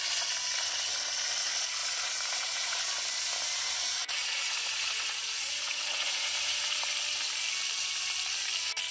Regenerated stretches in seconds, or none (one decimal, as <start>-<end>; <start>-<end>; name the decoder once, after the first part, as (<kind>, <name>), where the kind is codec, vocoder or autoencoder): 1.8-2.8 (vocoder, Vocos); 4.0-6.9